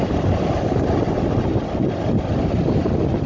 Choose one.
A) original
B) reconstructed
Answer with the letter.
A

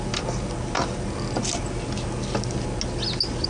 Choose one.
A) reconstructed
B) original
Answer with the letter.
B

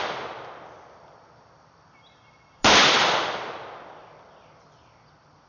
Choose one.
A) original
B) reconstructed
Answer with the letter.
A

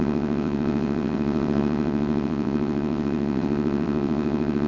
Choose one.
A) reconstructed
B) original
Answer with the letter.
A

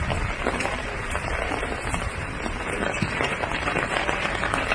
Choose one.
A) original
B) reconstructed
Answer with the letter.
B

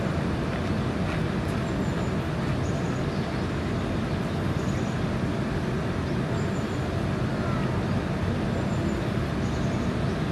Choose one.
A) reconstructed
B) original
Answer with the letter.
B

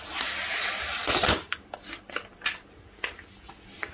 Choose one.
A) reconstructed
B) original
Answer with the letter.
B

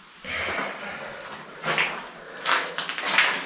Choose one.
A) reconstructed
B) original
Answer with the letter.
B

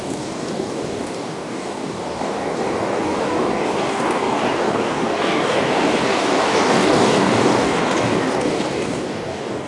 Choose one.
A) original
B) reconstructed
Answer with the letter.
B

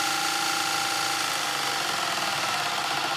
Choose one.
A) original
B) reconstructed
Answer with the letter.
A